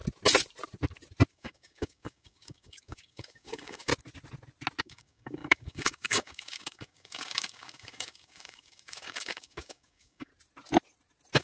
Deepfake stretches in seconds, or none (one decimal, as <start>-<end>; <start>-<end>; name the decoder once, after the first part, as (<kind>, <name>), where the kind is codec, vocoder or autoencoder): 1.3-3.9 (codec, DAC); 4.8-10.3